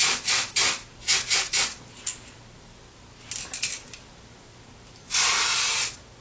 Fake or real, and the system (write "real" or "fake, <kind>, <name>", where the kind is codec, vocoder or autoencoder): real